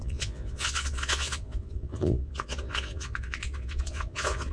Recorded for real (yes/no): no